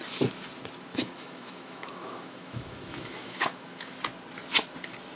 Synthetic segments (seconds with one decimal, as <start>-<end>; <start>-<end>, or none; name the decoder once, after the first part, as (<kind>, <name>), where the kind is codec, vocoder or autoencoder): 0.9-3.9 (autoencoder, DAC-VAE)